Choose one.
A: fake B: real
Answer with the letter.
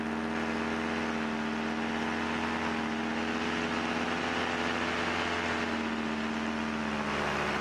B